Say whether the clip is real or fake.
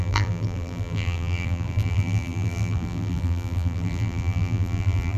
fake